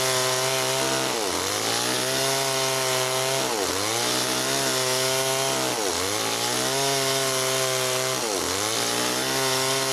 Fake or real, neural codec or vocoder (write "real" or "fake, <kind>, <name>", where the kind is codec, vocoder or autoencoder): real